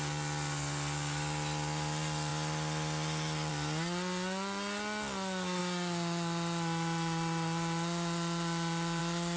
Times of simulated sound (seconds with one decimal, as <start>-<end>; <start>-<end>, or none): none